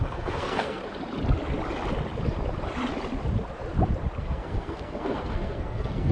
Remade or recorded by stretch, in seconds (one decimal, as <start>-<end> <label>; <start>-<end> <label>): 0.0-0.8 remade; 0.8-4.2 recorded; 4.2-6.1 remade